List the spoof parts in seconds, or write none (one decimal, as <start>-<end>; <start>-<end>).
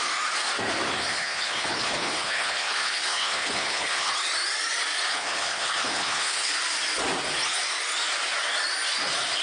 1.1-4.1; 5.1-6.5